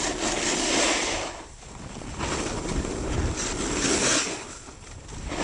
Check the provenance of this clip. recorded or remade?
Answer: recorded